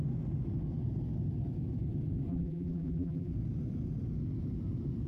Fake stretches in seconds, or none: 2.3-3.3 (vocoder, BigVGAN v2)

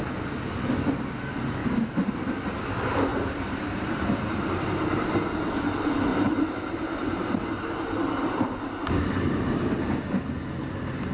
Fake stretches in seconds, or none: 3.1-4.5 (vocoder, BigVGAN v2); 6.1-7.4